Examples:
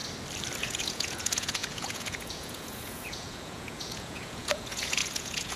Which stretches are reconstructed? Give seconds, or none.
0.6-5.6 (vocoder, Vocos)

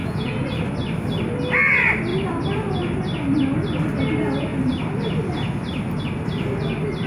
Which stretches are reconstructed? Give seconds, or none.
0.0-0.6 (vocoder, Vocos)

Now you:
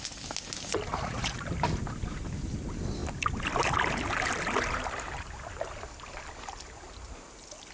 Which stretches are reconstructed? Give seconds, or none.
0.9-1.4 (vocoder, Vocos)

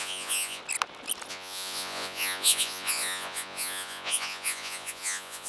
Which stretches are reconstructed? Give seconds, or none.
0.0-0.6 (vocoder, Vocos); 1.3-5.5

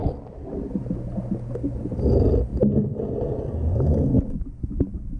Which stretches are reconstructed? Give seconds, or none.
none

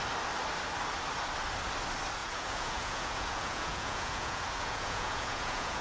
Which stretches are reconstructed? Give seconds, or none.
2.2-5.8 (vocoder, Vocos)

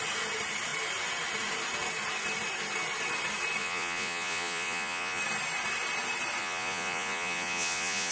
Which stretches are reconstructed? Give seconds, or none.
3.6-5.2 (vocoder, Vocos); 6.4-8.1